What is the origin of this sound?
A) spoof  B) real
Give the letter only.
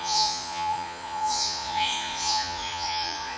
A